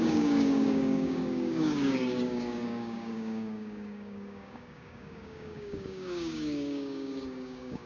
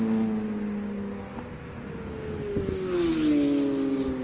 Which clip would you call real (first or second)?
second